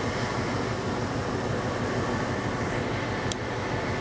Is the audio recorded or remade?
recorded